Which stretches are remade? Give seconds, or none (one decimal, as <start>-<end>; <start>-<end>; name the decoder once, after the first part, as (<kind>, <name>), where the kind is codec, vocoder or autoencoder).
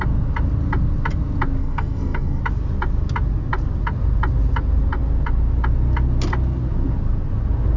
1.6-2.4 (codec, SNAC)